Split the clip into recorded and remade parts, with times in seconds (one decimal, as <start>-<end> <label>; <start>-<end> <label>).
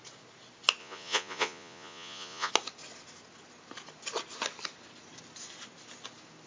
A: 0.0-0.8 recorded; 0.8-2.5 remade; 2.5-6.5 recorded